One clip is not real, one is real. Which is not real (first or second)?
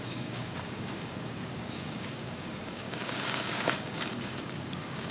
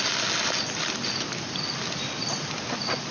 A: first